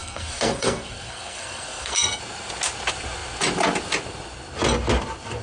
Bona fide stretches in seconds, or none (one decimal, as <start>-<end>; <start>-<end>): 2.2-5.4